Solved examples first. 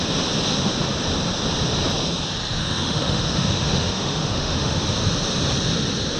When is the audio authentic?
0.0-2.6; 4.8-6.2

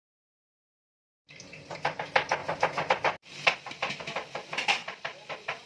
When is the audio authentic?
2.4-2.9